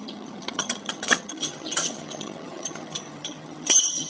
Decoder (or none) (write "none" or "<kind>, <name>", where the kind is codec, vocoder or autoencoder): vocoder, HiFi-GAN